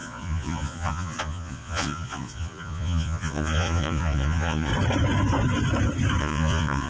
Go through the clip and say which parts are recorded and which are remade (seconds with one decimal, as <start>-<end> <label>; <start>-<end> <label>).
0.0-4.7 remade; 4.7-6.2 recorded; 6.2-6.9 remade